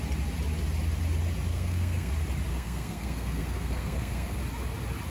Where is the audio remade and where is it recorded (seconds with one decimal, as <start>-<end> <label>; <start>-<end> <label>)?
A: 0.0-1.5 recorded; 1.5-2.1 remade; 2.1-2.5 recorded; 2.5-4.4 remade; 4.4-5.1 recorded